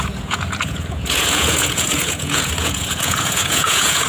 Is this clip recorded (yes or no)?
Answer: no